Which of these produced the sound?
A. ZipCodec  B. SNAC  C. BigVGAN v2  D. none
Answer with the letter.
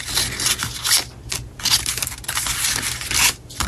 D